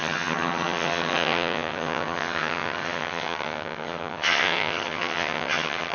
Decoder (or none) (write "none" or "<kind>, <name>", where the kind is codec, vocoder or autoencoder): vocoder, HiFi-GAN